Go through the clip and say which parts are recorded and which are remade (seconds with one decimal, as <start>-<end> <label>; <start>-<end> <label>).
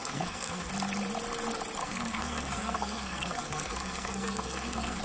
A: 0.0-0.7 remade; 0.7-1.8 recorded; 1.8-5.0 remade